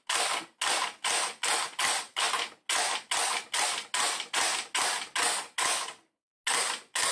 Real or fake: real